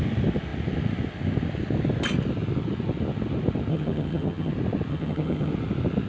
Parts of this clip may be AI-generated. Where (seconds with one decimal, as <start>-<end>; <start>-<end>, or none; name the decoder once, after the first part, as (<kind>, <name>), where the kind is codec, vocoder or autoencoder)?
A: 3.7-4.5 (vocoder, HiFi-GAN); 4.9-5.5